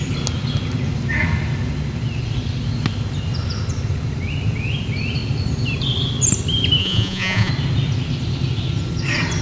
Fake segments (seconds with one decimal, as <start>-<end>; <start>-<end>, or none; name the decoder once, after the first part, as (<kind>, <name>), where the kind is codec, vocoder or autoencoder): 6.8-7.5 (vocoder, Vocos)